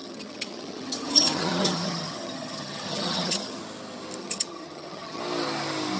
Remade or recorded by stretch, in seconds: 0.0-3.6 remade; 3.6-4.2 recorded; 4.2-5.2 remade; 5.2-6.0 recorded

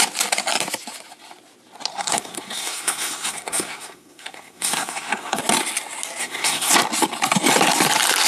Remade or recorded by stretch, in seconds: 0.0-1.9 recorded; 1.9-5.4 remade; 5.4-6.2 recorded; 6.2-6.7 remade; 6.7-8.3 recorded